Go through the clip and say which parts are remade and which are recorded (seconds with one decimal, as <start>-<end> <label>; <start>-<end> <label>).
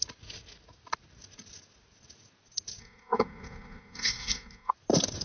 0.0-2.8 recorded; 2.8-4.7 remade; 4.7-5.2 recorded